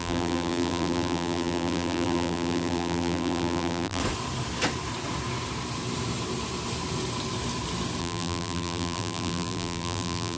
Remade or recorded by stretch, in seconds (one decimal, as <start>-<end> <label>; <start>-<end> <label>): 0.0-4.0 remade; 4.0-8.0 recorded; 8.0-10.4 remade